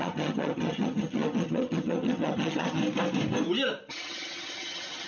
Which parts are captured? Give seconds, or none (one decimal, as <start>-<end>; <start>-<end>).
2.8-3.9